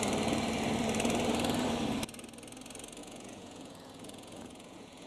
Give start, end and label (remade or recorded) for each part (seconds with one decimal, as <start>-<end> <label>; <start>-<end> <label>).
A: 0.0-3.0 recorded; 3.0-5.1 remade